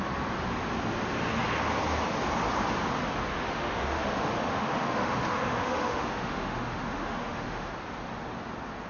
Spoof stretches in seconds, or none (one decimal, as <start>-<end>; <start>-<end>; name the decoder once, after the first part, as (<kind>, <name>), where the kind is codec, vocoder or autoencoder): 3.3-7.7 (autoencoder, DAC-VAE)